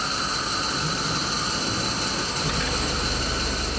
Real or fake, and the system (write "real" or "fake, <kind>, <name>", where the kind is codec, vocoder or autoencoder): real